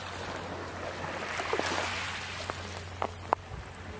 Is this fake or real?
real